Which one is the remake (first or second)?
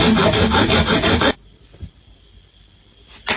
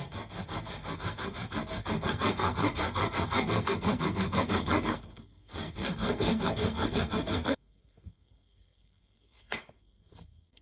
second